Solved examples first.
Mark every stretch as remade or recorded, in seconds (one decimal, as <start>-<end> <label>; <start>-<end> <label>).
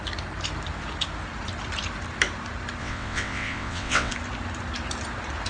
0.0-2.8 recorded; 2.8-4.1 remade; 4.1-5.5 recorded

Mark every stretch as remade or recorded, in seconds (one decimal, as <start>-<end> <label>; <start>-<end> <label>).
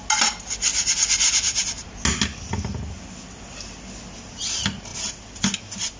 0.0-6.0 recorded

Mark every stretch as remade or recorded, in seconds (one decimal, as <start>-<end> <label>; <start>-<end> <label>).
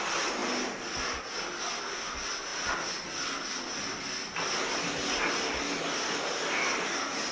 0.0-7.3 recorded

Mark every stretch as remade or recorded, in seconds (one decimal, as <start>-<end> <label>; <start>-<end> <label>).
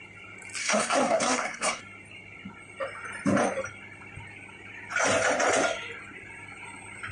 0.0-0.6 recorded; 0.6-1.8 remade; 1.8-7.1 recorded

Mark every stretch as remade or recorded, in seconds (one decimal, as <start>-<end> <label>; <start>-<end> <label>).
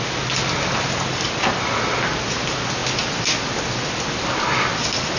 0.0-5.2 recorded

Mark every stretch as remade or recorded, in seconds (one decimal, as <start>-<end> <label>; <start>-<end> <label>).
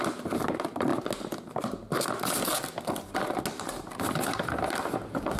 0.0-5.4 recorded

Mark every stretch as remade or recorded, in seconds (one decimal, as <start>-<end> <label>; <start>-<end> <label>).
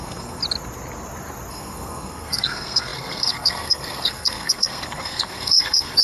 0.0-0.4 remade; 0.4-1.5 recorded; 1.5-6.0 remade